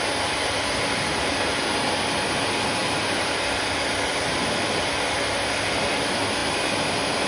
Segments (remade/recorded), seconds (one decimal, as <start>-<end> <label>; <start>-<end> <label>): 0.0-7.3 recorded